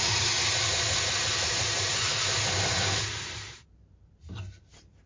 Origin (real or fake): fake